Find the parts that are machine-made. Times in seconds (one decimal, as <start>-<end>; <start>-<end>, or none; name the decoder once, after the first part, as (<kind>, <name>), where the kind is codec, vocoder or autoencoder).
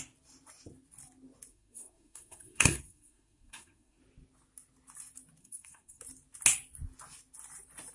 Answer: 1.5-4.0 (codec, SNAC); 5.4-6.0